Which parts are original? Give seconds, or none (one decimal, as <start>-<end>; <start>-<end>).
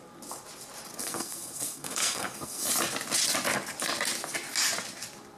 0.0-1.0; 2.7-5.4